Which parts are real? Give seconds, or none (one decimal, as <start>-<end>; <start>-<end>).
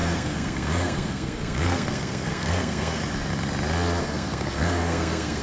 3.0-4.0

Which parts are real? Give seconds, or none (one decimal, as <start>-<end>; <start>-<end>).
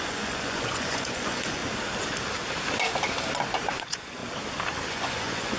1.6-3.7; 4.2-4.9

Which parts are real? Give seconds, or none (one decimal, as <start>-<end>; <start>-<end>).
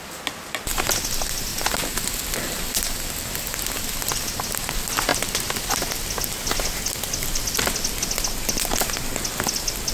0.0-1.5; 3.4-9.9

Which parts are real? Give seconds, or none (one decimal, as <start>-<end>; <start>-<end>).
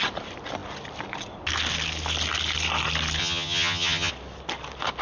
0.0-3.2; 4.1-5.0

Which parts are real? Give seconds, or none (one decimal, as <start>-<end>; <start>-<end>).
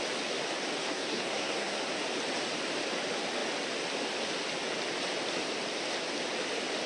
0.0-0.8; 1.8-6.9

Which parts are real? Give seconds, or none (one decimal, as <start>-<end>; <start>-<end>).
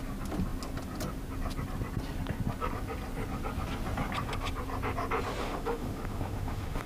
0.0-5.4